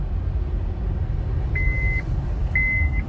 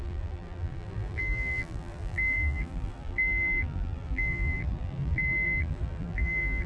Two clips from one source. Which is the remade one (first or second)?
second